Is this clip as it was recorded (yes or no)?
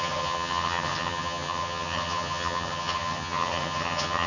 no